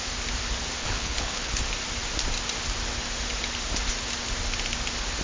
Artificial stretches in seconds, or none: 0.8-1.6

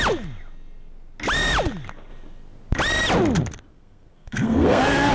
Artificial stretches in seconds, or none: 3.7-5.1